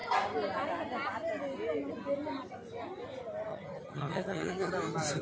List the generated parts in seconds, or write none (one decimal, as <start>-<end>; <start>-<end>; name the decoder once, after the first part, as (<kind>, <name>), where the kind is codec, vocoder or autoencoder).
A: 3.5-4.7 (vocoder, HiFi-GAN)